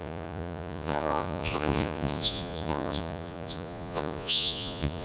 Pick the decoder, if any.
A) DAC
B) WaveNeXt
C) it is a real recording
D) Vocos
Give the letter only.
D